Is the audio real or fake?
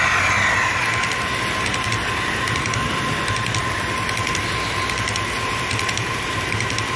real